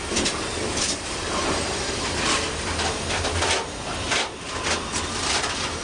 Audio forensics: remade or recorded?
recorded